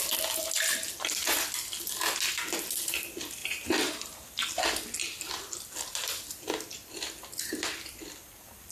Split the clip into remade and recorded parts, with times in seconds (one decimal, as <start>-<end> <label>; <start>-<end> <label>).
0.0-3.4 recorded; 3.4-4.5 remade; 4.5-8.7 recorded